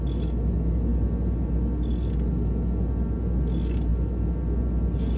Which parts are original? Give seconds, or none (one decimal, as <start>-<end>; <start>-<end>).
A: 0.0-5.2

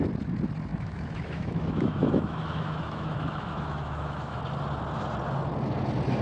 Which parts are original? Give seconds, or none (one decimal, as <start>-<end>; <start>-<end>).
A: 0.0-0.7; 4.4-6.2